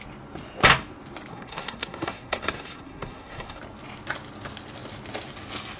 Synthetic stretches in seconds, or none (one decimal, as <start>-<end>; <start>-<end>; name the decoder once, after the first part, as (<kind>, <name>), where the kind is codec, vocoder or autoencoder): 1.3-3.6 (codec, SNAC)